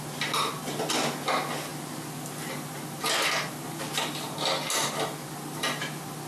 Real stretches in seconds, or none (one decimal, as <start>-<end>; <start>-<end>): 0.0-4.8; 5.3-6.3